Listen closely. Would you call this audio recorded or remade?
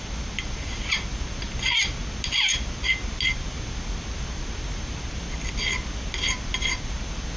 recorded